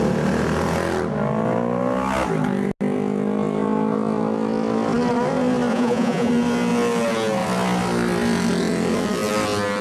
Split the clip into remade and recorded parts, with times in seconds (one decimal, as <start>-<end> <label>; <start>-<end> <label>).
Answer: 0.0-5.7 recorded; 5.7-6.3 remade; 6.3-9.8 recorded